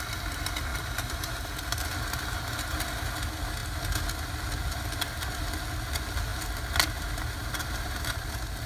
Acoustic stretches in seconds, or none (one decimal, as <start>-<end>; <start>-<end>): 0.0-0.7; 1.4-8.7